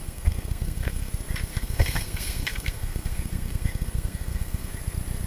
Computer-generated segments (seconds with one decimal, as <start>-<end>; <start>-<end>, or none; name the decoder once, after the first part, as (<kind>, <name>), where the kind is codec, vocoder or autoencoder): 0.0-1.1 (codec, SNAC); 1.5-4.7